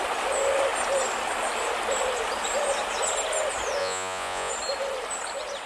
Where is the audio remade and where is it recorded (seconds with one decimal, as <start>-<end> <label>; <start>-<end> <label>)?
0.0-3.8 recorded; 3.8-4.5 remade; 4.5-5.7 recorded